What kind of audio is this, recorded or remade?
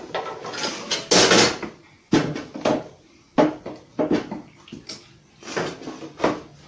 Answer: recorded